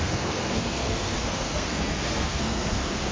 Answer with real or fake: fake